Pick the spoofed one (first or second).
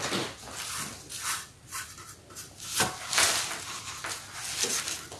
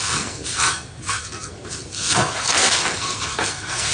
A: second